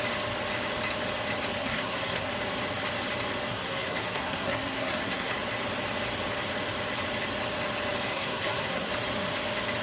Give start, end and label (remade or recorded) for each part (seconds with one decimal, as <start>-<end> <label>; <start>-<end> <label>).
0.0-1.6 recorded; 1.6-2.3 remade; 2.3-3.5 recorded; 3.5-5.3 remade; 5.3-8.1 recorded; 8.1-8.9 remade; 8.9-9.8 recorded